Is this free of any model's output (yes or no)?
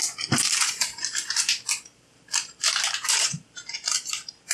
no